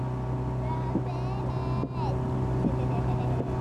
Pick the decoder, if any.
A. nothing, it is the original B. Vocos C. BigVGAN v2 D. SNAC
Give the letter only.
A